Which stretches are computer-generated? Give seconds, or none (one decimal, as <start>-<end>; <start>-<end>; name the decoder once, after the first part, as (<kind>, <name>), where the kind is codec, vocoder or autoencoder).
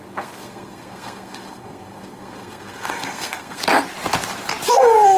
0.0-3.6 (codec, SNAC); 4.7-5.2